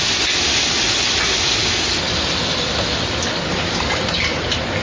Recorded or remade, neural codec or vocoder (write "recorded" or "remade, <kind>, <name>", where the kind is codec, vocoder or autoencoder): recorded